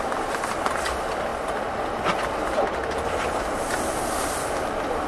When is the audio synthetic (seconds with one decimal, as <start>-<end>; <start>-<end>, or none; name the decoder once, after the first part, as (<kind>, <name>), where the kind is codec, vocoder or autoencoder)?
0.0-1.3 (vocoder, BigVGAN v2); 4.0-5.1